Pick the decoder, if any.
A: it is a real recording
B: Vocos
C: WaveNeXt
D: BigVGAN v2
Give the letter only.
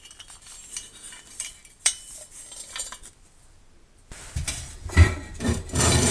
D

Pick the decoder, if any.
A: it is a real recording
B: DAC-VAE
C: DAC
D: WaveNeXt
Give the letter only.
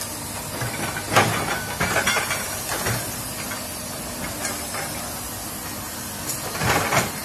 A